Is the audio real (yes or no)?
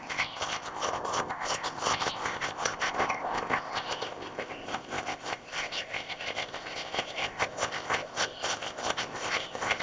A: no